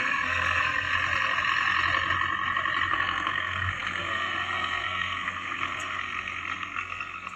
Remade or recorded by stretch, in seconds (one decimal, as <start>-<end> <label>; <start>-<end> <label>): 0.0-0.9 remade; 0.9-2.9 recorded; 2.9-7.4 remade